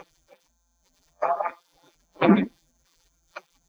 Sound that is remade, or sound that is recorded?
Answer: remade